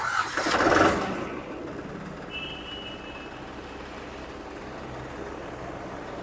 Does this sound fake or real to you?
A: real